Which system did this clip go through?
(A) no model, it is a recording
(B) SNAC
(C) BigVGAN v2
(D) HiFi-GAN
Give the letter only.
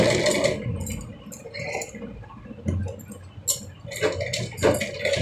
A